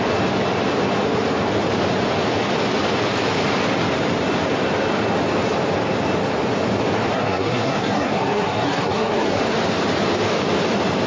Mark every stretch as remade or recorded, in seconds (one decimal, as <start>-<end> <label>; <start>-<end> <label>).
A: 0.0-7.1 recorded; 7.1-9.4 remade; 9.4-11.1 recorded